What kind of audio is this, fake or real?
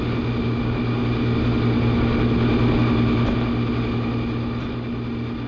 real